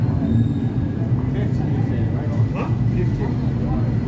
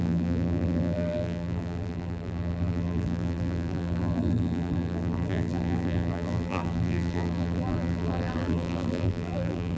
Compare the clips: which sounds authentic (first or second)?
first